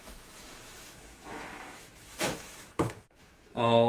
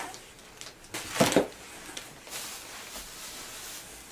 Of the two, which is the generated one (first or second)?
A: first